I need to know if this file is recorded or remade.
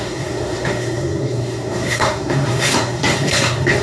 remade